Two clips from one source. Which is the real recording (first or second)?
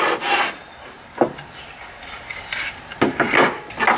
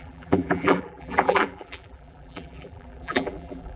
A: first